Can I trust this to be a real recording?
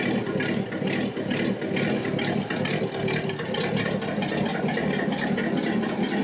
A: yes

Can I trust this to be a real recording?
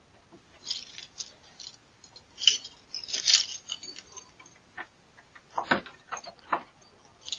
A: yes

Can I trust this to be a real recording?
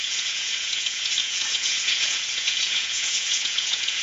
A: no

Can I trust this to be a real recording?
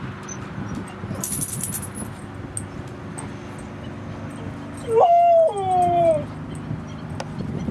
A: yes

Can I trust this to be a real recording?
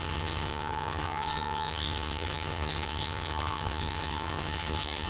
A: no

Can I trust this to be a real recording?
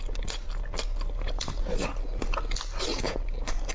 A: yes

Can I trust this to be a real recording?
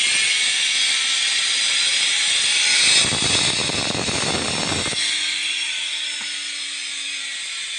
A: yes